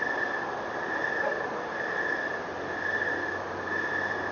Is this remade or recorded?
recorded